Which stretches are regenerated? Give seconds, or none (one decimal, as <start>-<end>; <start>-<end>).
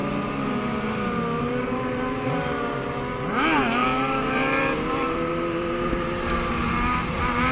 1.5-7.5